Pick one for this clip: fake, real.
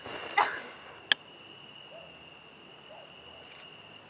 real